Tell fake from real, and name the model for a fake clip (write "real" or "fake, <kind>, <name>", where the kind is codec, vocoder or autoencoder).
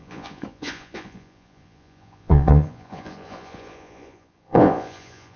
fake, vocoder, Vocos